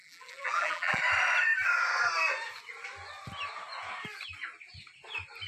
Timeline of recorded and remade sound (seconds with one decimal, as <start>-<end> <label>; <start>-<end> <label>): 0.0-1.0 remade; 1.0-5.5 recorded